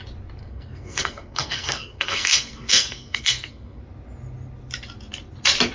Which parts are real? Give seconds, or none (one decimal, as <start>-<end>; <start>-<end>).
0.0-0.4; 3.8-5.7